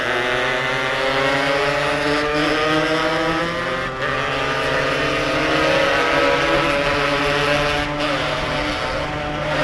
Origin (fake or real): real